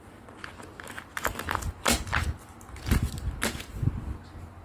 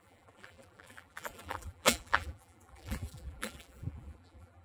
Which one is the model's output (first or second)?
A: second